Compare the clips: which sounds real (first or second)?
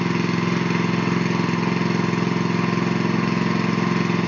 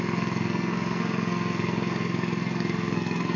first